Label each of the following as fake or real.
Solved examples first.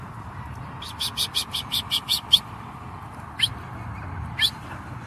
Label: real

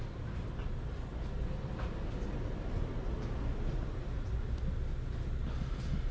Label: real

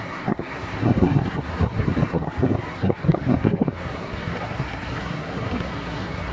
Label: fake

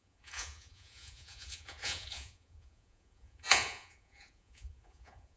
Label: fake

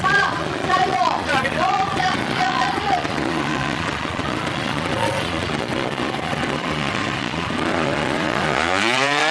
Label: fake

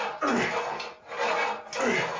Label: real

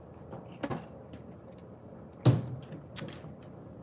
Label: real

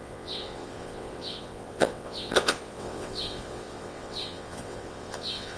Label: fake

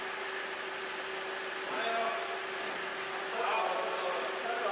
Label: real